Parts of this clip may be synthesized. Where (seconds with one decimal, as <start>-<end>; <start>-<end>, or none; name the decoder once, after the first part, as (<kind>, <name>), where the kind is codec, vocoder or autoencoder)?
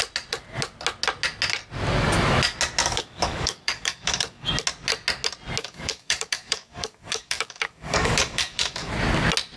2.8-4.5 (codec, DAC); 5.6-8.9